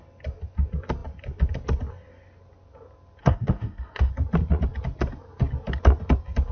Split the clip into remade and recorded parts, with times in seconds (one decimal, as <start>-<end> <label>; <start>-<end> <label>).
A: 0.0-3.2 recorded; 3.2-4.1 remade; 4.1-6.5 recorded